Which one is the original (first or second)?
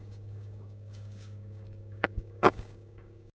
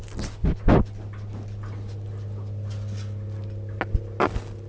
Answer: second